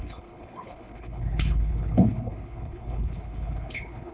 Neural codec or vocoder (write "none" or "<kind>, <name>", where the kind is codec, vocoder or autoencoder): codec, HILCodec